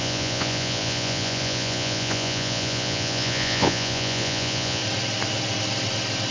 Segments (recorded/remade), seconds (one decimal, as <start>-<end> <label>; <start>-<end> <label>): 0.0-4.8 remade; 4.8-6.3 recorded